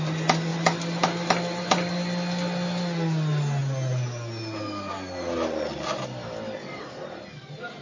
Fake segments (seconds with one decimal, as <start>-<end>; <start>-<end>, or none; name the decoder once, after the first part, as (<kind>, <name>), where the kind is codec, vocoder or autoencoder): none